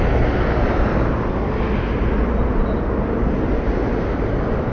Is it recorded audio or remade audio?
recorded